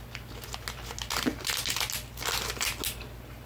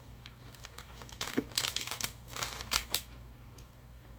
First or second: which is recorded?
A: first